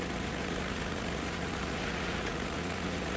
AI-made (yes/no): yes